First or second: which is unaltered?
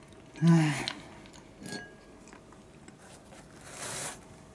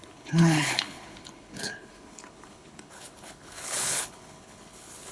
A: first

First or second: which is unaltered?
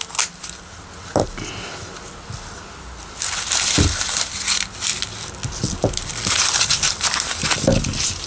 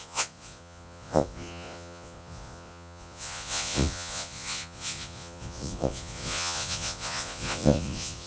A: first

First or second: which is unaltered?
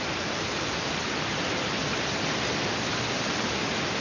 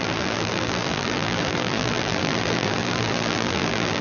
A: first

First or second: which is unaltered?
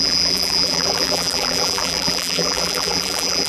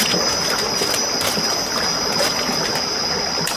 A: second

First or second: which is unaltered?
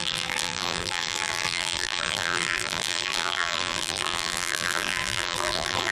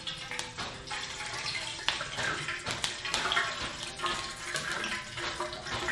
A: second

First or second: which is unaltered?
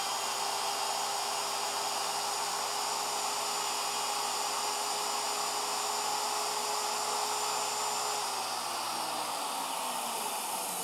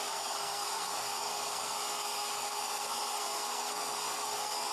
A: first